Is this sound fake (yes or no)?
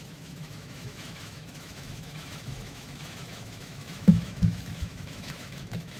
yes